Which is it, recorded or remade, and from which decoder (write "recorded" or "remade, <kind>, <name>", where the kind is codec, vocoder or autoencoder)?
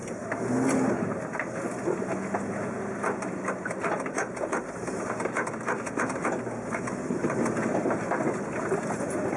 recorded